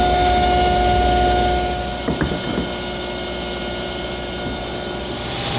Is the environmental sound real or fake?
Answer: real